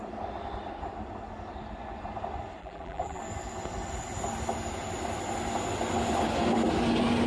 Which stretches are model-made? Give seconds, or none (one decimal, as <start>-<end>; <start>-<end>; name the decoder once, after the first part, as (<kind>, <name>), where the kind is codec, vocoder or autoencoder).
2.6-3.2 (vocoder, BigVGAN v2)